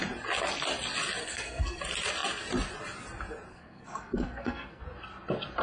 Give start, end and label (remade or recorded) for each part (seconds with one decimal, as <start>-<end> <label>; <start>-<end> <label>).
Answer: 0.0-1.2 recorded; 1.2-1.8 remade; 1.8-3.5 recorded; 3.5-4.8 remade; 4.8-5.6 recorded